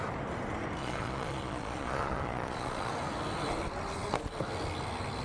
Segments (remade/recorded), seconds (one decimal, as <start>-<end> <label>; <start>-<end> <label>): 0.0-0.8 recorded; 0.8-2.9 remade; 2.9-5.2 recorded